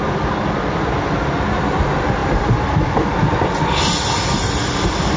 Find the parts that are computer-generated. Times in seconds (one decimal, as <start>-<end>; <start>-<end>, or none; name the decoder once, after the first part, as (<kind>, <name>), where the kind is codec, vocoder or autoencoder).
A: none